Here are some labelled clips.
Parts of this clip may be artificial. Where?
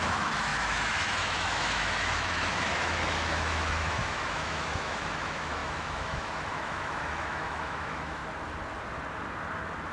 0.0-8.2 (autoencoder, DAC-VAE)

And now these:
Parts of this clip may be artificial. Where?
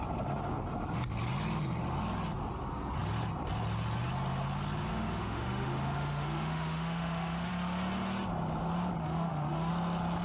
4.9-7.5 (autoencoder, DAC-VAE); 9.0-9.7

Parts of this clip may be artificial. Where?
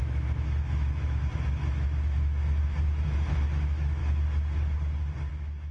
0.0-4.0 (autoencoder, DAC-VAE); 5.3-5.7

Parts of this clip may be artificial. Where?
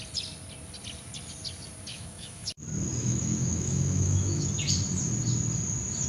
1.9-2.5 (autoencoder, DAC-VAE); 3.0-4.5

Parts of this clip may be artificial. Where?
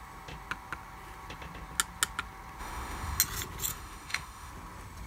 2.6-3.2 (autoencoder, DAC-VAE); 3.7-4.5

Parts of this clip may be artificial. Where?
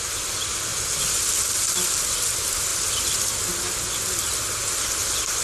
none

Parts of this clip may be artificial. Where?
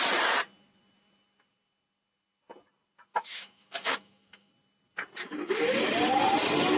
3.1-4.5 (autoencoder, DAC-VAE); 5.2-5.9